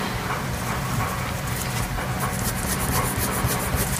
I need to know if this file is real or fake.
real